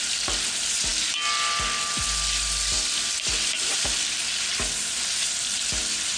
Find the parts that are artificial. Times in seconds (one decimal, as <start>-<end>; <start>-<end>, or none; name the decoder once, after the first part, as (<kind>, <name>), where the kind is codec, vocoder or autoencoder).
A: none